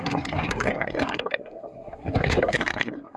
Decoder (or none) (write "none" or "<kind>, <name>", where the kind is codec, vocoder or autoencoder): codec, SNAC